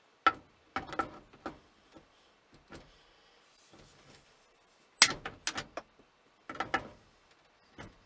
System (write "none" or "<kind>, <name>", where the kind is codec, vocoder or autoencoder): none